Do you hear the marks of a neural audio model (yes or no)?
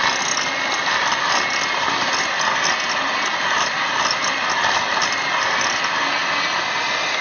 no